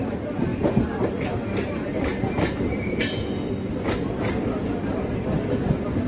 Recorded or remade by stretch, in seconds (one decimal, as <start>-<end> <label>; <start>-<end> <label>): 0.0-6.1 recorded

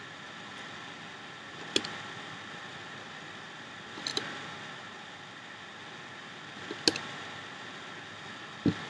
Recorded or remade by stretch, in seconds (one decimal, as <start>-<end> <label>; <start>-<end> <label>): 0.0-8.9 recorded